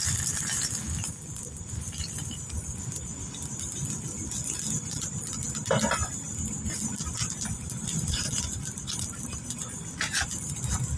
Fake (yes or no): no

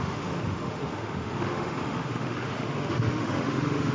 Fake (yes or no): yes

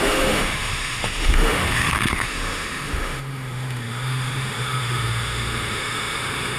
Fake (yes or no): yes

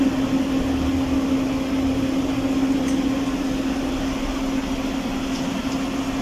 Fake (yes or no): no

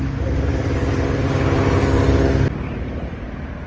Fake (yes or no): no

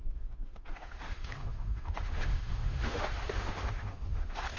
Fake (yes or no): yes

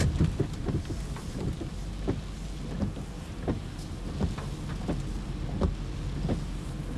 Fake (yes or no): no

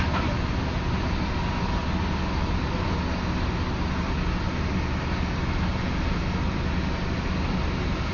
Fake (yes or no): no